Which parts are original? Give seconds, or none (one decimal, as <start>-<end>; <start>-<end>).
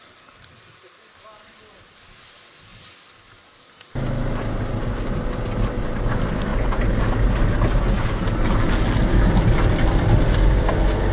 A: 0.0-11.1